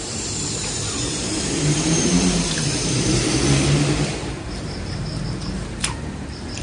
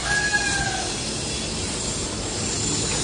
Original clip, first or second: second